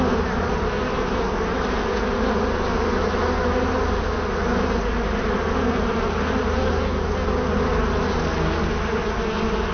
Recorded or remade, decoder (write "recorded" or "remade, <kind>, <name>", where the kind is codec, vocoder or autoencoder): recorded